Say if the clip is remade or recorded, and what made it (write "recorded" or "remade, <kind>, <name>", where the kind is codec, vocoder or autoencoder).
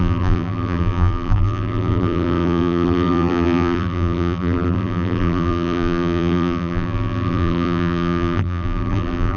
remade, vocoder, BigVGAN v2